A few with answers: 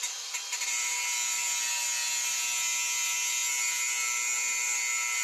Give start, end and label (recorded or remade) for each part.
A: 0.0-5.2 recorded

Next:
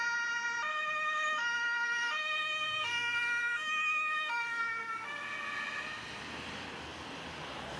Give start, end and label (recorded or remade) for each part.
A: 0.0-0.7 recorded; 0.7-5.2 remade; 5.2-7.8 recorded

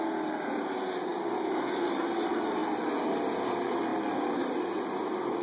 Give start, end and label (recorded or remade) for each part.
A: 0.0-5.4 recorded

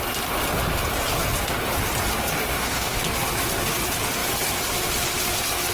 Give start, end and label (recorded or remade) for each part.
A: 0.0-2.3 recorded; 2.3-3.0 remade; 3.0-5.7 recorded

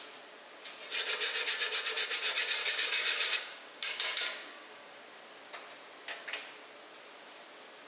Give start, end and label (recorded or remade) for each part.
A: 0.0-2.6 recorded; 2.6-5.0 remade; 5.0-7.9 recorded